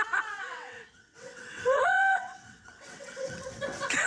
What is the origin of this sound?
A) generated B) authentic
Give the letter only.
A